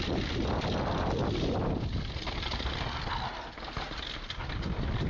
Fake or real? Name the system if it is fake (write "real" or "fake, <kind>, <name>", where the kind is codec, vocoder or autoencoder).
real